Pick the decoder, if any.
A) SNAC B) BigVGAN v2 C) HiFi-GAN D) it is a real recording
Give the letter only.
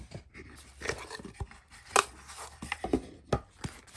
D